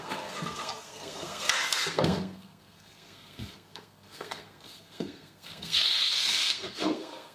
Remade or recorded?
remade